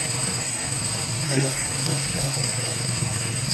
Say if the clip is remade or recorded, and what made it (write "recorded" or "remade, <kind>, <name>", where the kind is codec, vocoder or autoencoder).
remade, codec, SNAC